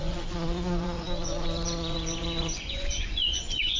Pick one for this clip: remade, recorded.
remade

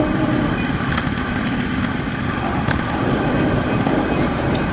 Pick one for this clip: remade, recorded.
recorded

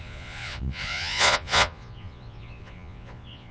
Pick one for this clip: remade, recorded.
remade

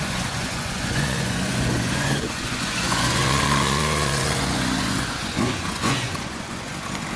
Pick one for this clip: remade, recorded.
remade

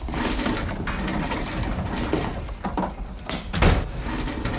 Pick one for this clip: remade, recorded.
recorded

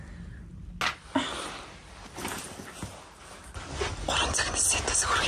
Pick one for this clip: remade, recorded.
recorded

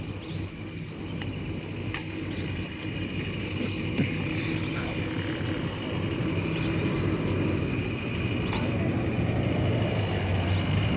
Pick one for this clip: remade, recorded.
recorded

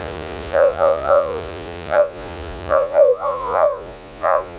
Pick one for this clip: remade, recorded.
remade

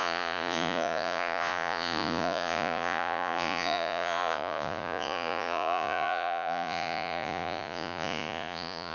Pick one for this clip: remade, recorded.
remade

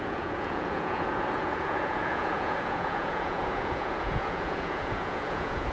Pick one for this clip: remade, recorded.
remade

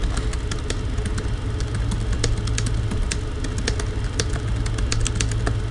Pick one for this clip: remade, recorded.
recorded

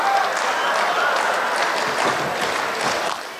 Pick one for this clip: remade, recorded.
recorded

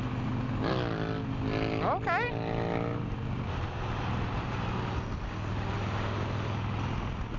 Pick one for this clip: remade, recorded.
recorded